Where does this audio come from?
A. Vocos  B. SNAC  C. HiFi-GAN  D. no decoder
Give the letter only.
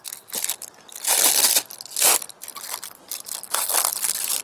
D